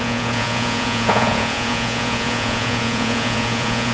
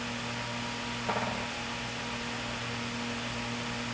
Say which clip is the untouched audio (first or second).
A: second